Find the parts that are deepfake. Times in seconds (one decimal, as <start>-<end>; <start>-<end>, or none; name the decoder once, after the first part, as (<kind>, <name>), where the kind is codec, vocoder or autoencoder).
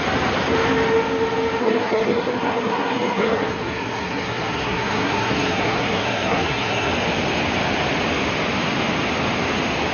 1.6-6.9 (codec, SNAC)